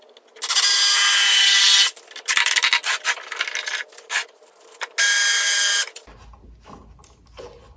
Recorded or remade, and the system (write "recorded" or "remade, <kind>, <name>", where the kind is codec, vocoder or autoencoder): recorded